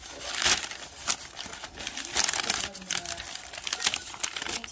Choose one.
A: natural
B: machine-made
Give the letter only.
A